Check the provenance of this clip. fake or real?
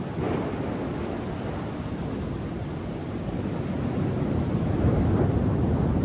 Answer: real